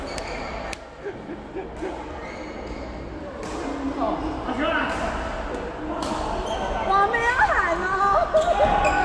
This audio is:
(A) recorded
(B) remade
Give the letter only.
A